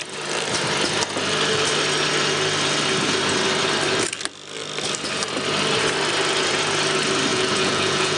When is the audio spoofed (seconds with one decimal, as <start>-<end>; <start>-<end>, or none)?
7.3-8.2